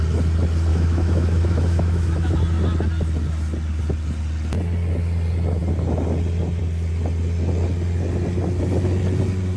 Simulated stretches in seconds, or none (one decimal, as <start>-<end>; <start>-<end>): 0.7-2.3